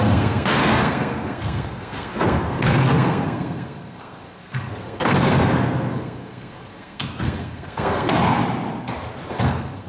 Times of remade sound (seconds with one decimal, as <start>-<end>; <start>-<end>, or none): 0.0-8.4; 9.3-9.9